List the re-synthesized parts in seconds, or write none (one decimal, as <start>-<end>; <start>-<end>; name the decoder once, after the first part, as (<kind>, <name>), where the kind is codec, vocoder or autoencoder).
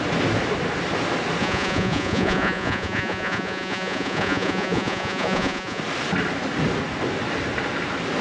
1.4-5.8 (vocoder, Vocos)